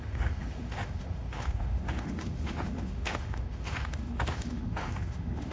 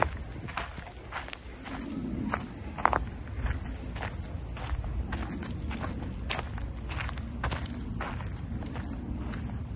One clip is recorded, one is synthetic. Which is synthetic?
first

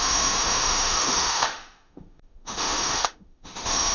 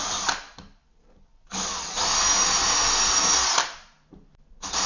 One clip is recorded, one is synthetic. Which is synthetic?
first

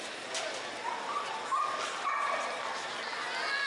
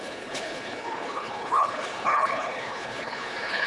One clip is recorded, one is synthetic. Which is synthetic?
second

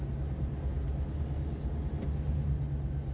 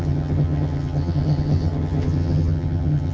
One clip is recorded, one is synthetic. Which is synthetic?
second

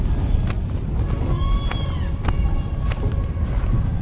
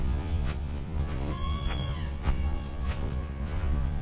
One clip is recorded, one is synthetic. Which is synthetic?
second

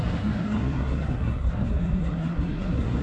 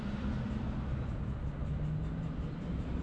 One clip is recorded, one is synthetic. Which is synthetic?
first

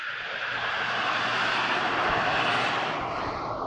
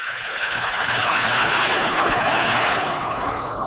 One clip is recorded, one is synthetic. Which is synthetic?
second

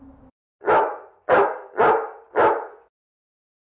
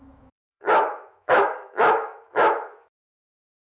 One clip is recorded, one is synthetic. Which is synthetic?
second